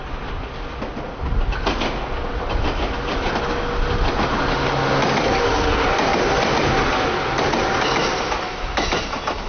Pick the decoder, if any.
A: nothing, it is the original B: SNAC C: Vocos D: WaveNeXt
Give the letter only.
A